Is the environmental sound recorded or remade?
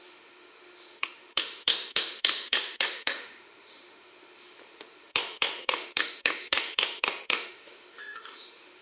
remade